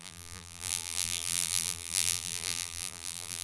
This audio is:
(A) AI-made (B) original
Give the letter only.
A